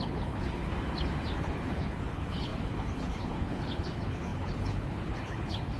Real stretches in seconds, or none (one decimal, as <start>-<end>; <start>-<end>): 0.6-1.4